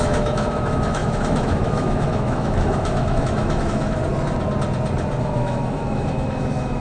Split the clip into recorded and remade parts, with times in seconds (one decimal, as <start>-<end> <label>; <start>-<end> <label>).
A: 0.0-4.0 remade; 4.0-5.2 recorded; 5.2-6.8 remade